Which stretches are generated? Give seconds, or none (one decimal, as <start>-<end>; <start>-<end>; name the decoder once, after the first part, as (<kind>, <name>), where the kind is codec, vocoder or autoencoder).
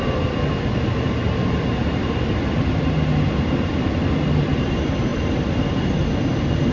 1.8-2.7 (vocoder, BigVGAN v2); 5.1-5.9